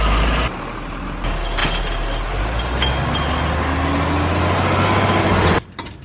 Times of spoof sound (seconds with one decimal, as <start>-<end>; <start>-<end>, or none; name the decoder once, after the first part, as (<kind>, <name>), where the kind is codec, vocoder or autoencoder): none